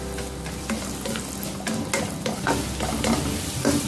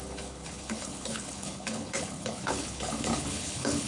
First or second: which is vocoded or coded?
second